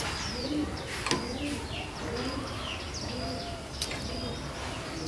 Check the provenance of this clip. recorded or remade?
recorded